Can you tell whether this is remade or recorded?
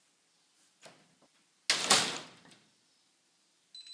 recorded